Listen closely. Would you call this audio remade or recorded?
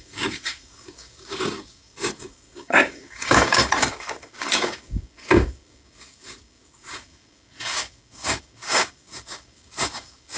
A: remade